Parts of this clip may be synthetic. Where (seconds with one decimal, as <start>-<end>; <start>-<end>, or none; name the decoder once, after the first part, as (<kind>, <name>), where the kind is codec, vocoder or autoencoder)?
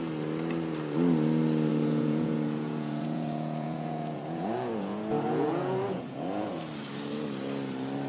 1.7-6.6 (vocoder, Vocos)